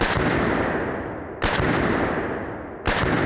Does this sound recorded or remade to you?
recorded